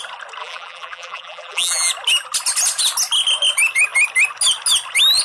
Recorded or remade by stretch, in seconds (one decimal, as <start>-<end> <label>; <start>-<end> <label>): 0.0-0.4 recorded; 0.4-1.9 remade; 1.9-5.2 recorded